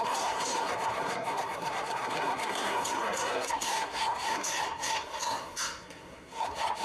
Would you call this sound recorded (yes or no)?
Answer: no